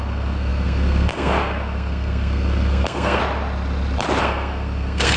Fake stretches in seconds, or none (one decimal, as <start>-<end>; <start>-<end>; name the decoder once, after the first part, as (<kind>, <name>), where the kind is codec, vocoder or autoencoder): 0.0-3.2 (codec, SNAC); 4.2-5.2